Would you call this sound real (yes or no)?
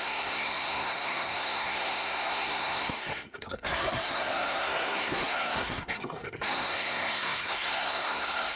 no